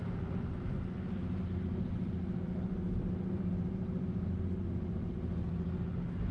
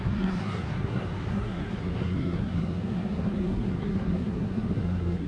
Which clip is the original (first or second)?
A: first